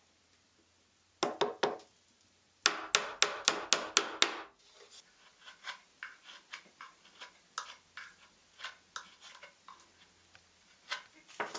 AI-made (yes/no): no